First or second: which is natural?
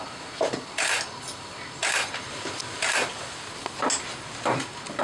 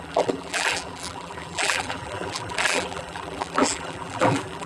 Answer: first